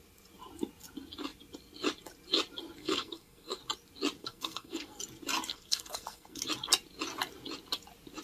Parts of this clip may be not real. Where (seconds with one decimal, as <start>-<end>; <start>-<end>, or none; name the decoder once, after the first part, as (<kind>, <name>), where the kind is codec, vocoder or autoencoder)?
2.8-3.6 (codec, SNAC); 4.2-5.0; 5.5-6.4